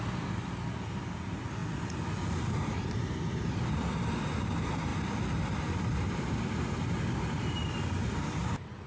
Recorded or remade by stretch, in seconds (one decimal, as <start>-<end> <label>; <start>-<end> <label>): 0.0-8.9 recorded